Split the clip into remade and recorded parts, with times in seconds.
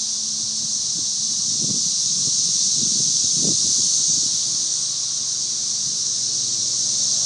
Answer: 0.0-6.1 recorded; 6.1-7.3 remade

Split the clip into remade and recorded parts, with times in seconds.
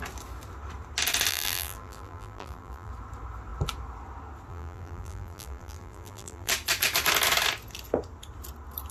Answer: 0.0-1.3 recorded; 1.3-2.9 remade; 2.9-4.5 recorded; 4.5-6.5 remade; 6.5-8.9 recorded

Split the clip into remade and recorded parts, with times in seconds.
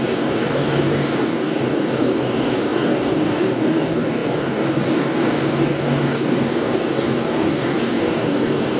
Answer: 0.0-8.8 remade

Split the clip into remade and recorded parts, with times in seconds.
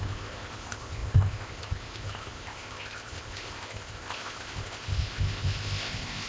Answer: 0.0-6.3 remade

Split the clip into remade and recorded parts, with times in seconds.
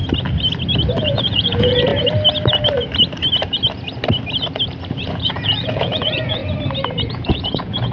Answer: 0.0-1.0 recorded; 1.0-1.9 remade; 1.9-4.9 recorded; 4.9-6.4 remade; 6.4-7.1 recorded; 7.1-7.9 remade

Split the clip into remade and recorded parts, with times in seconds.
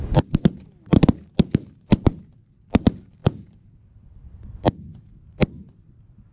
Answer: 0.0-6.3 recorded